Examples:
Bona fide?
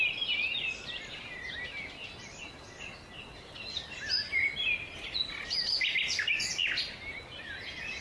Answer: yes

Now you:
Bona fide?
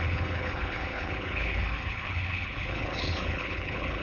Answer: no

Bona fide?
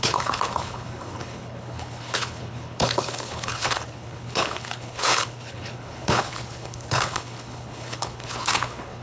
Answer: no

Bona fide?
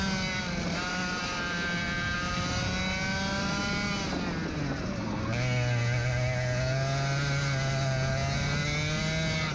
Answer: yes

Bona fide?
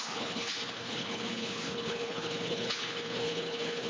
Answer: no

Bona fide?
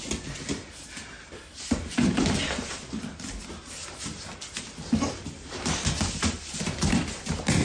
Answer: yes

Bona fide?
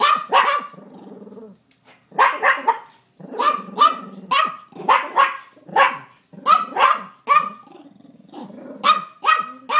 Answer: yes